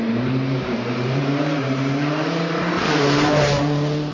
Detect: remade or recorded remade